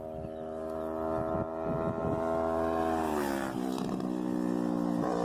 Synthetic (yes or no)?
no